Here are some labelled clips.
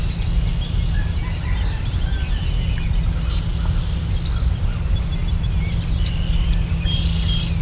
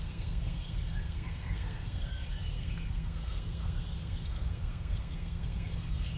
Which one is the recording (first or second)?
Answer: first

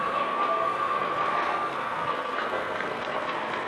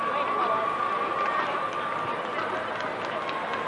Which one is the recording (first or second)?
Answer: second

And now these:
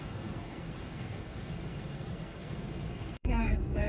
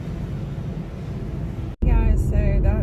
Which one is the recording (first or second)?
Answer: second